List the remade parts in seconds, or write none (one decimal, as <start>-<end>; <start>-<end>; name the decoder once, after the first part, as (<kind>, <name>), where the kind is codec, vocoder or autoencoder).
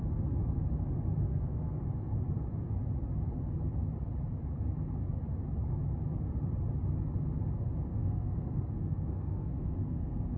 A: 1.3-2.4 (codec, SNAC); 7.9-10.4